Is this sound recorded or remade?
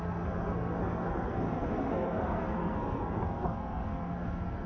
remade